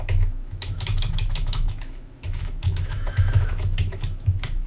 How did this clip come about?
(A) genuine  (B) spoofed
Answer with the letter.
B